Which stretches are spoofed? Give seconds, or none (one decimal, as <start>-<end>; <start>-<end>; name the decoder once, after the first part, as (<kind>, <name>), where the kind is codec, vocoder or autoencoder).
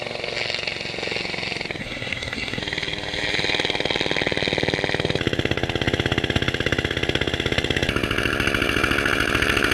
1.8-2.6 (codec, SNAC)